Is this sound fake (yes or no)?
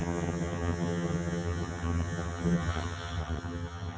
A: yes